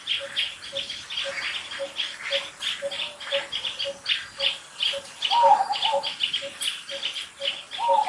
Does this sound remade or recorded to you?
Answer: recorded